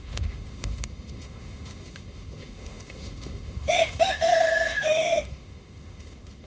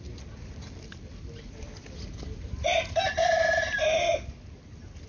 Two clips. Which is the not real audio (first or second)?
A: first